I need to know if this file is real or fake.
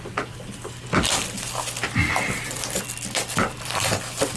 real